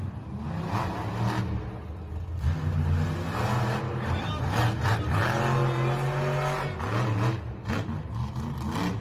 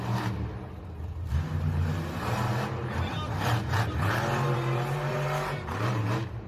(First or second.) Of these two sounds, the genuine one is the first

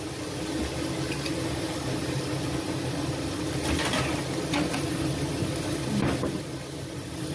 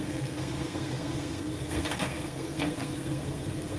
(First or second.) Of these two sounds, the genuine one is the first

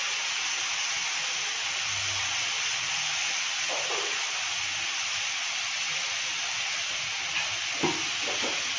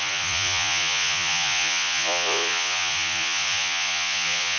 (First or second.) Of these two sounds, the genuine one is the first